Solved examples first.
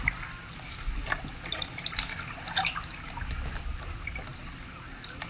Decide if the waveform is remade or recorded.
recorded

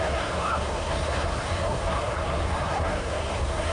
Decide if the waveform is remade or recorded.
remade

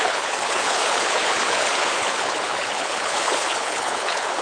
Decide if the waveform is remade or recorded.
remade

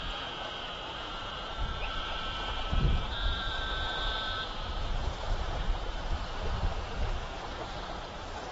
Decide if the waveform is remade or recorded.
remade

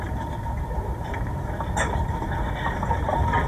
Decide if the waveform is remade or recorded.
recorded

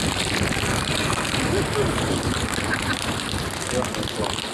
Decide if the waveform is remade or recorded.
recorded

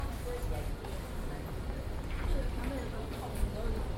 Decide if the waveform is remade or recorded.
recorded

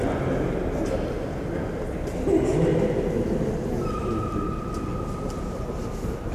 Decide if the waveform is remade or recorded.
recorded